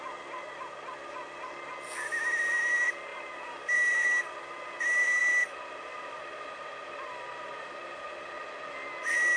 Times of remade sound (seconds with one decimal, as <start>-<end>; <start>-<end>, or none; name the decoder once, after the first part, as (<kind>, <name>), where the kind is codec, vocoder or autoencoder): 3.1-4.4 (vocoder, BigVGAN v2)